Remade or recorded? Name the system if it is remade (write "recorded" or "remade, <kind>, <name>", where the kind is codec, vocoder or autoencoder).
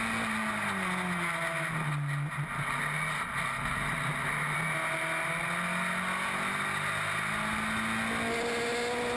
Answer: recorded